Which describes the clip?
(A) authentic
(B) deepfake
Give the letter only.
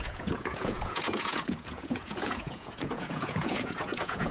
B